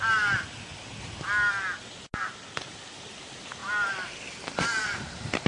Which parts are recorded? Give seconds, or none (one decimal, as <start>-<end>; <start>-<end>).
0.0-0.7; 1.2-5.5